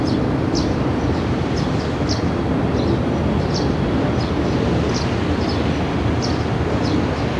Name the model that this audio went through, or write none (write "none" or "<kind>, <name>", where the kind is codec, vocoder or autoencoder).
none